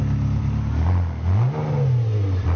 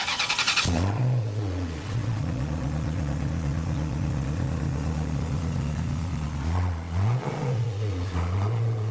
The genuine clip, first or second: first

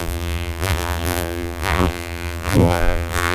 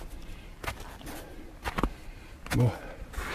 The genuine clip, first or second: second